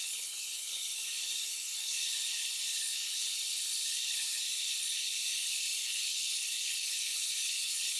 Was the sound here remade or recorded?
remade